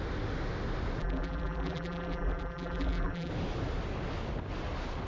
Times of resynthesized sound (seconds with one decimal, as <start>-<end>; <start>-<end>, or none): 1.0-3.3